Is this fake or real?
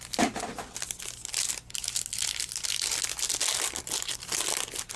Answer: real